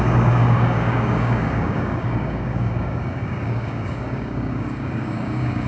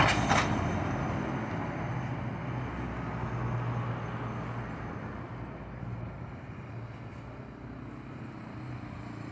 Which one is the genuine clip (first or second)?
second